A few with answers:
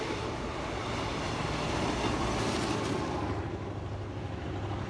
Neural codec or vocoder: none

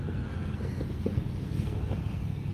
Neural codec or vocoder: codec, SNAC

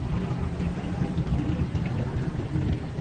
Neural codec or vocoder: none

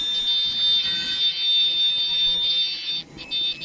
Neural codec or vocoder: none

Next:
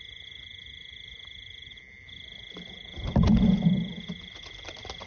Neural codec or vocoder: none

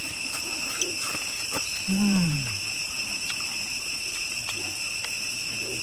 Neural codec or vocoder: vocoder, BigVGAN v2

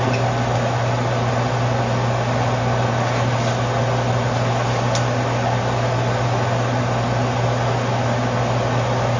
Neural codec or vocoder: none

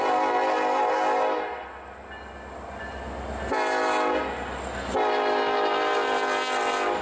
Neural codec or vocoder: none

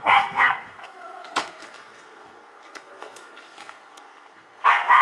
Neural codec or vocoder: codec, SNAC